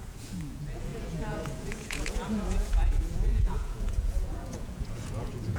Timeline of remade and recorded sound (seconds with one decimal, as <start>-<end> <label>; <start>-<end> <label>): 0.0-5.6 remade